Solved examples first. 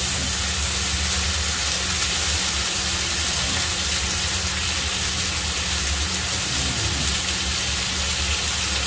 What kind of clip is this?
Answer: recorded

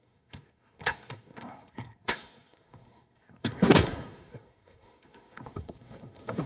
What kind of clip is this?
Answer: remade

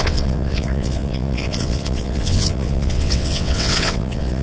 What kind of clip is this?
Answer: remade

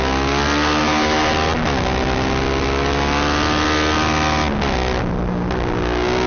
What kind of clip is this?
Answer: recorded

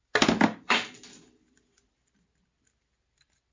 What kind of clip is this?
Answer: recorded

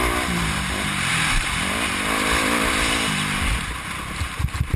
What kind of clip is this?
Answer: recorded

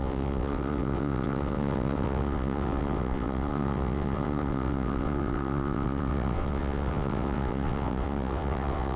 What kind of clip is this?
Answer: remade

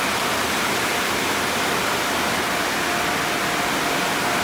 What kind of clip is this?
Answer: recorded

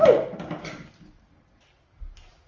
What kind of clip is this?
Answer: recorded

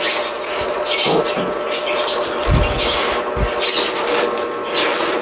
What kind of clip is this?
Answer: recorded